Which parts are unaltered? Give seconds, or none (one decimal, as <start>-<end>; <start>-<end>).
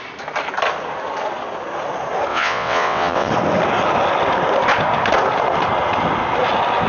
0.0-2.3; 3.3-6.9